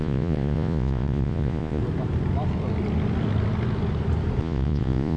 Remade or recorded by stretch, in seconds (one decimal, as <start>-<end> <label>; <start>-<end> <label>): 0.0-1.8 remade; 1.8-4.4 recorded; 4.4-5.2 remade